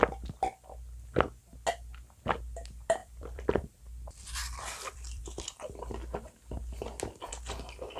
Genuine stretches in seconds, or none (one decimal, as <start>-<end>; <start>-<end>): 0.0-3.0; 3.8-4.4; 5.2-8.0